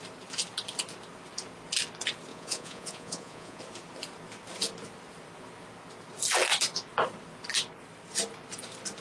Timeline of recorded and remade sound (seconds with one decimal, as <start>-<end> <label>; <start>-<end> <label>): 0.0-2.3 recorded; 2.3-3.6 remade; 3.6-9.0 recorded